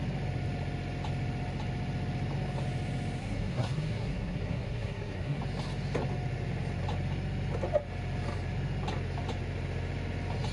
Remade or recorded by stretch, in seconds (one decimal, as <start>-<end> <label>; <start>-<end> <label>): 0.0-3.2 recorded; 3.2-5.4 remade; 5.4-10.5 recorded